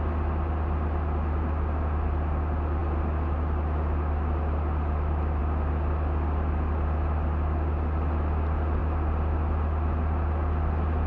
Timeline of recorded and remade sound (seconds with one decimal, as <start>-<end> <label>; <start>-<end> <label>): 0.0-11.1 recorded